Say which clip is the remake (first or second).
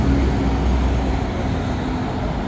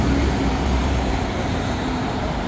second